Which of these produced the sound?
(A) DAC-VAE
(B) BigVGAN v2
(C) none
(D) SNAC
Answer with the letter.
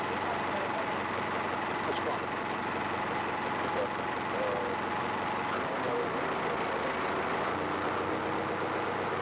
C